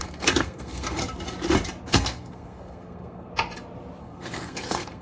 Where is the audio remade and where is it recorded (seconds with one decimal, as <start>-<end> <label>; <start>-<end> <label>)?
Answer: 0.0-1.0 remade; 1.0-1.9 recorded; 1.9-3.3 remade; 3.3-4.0 recorded; 4.0-5.0 remade